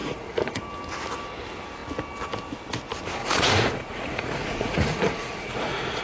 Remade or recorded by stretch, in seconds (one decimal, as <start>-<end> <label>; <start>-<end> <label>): 0.0-0.6 remade; 0.6-3.2 recorded; 3.2-6.0 remade